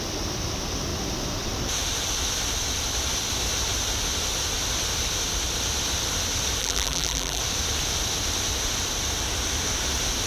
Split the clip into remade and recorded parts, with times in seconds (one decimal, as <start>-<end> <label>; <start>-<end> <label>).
0.0-6.6 recorded; 6.6-7.4 remade; 7.4-10.3 recorded